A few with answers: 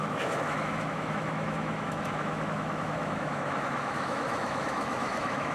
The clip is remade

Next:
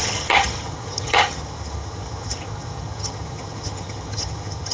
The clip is remade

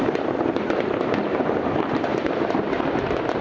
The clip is recorded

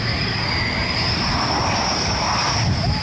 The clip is recorded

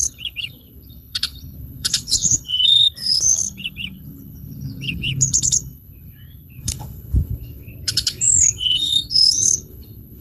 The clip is remade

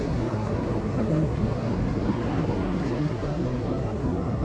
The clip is remade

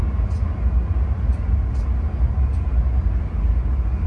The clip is recorded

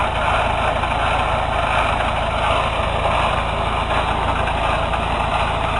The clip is recorded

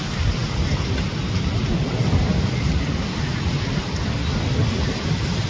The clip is recorded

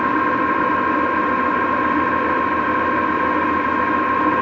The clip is recorded